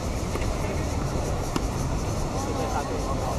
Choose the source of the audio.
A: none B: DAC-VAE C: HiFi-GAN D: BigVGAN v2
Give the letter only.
D